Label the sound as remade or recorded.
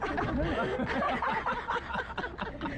recorded